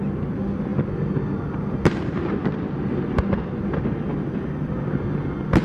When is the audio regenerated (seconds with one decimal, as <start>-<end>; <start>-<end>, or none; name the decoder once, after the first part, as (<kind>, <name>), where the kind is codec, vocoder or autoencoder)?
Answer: none